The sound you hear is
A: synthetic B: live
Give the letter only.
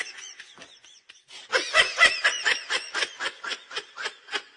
A